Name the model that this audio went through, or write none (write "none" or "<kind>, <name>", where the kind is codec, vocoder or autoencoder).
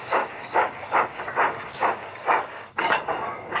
codec, DAC